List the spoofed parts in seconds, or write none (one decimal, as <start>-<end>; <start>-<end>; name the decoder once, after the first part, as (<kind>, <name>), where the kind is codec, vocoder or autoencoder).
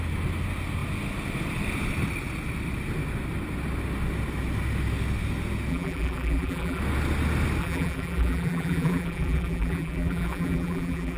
5.7-6.8 (vocoder, BigVGAN v2); 7.6-11.2